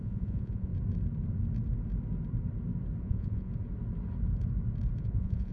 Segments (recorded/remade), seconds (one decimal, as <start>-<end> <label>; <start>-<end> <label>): 0.0-0.7 remade; 0.7-3.0 recorded; 3.0-3.5 remade; 3.5-5.0 recorded; 5.0-5.5 remade